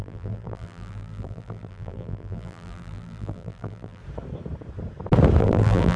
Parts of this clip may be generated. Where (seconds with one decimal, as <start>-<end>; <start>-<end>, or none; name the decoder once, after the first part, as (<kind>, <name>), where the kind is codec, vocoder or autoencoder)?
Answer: 0.0-4.0 (vocoder, BigVGAN v2); 5.4-6.0